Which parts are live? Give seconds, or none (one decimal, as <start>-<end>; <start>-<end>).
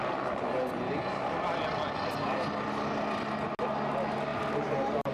0.0-4.3